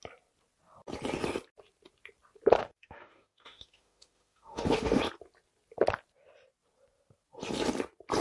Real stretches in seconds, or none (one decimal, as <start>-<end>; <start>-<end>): 0.0-2.6; 5.0-8.2